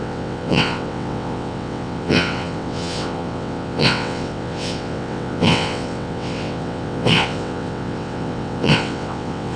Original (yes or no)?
no